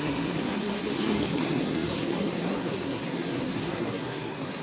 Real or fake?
fake